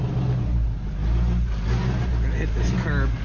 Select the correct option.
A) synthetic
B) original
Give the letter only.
B